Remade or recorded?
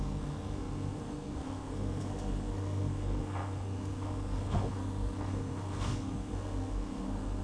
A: remade